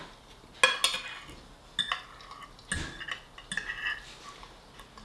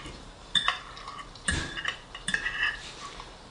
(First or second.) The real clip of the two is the first